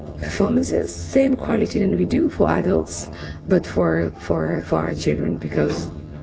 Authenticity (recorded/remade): remade